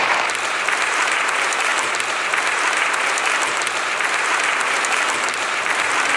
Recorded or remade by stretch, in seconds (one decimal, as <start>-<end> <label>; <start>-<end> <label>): 0.0-6.2 remade